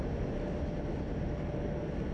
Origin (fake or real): real